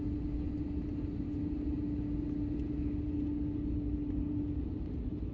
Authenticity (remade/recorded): recorded